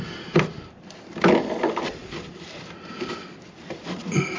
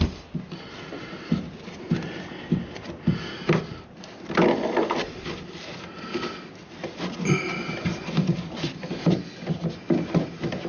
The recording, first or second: second